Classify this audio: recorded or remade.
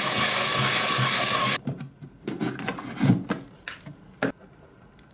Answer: recorded